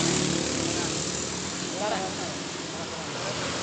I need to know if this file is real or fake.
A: real